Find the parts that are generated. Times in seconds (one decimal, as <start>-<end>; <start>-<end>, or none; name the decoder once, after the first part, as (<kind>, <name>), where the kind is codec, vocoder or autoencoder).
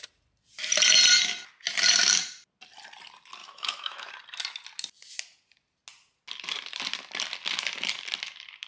3.4-4.1 (autoencoder, DAC-VAE)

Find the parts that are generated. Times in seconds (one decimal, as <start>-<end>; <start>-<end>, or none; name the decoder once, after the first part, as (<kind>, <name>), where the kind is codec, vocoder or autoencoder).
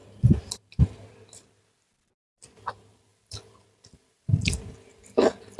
0.0-1.1 (vocoder, BigVGAN v2)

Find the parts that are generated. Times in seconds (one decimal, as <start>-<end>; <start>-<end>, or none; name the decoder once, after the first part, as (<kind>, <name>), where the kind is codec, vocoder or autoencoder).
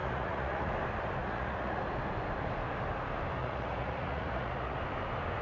0.0-0.7 (vocoder, Vocos); 1.2-1.8; 3.4-4.8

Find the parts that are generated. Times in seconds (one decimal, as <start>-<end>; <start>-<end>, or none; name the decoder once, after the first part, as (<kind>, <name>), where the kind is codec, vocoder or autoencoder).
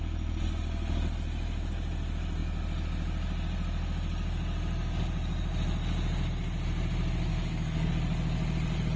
7.3-7.9 (codec, DAC)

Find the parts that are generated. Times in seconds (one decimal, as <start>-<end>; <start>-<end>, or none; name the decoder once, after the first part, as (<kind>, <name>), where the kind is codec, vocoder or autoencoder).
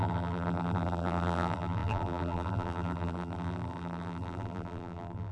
0.0-5.3 (vocoder, BigVGAN v2)